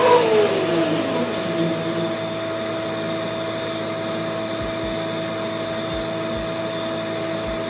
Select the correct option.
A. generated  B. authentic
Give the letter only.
B